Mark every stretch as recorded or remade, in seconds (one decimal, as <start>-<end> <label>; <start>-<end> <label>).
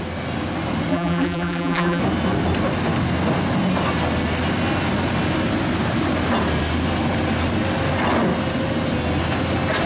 0.0-0.9 recorded; 0.9-2.0 remade; 2.0-9.9 recorded